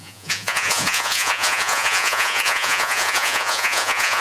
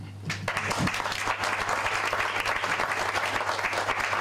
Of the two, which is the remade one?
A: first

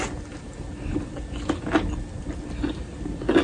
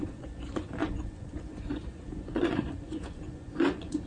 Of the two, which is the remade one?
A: second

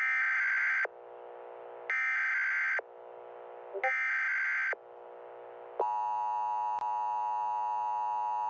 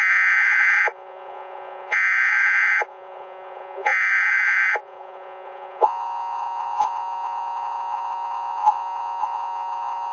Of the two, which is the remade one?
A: second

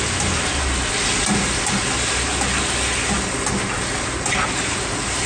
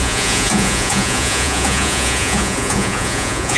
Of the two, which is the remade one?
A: second